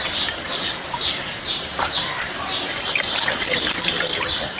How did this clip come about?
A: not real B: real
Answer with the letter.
A